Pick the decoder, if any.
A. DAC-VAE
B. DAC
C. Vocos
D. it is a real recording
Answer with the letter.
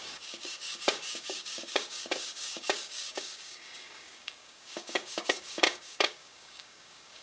B